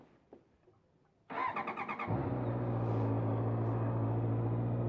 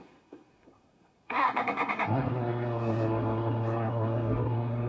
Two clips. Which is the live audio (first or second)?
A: first